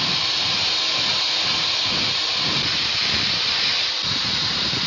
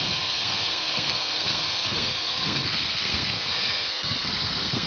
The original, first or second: first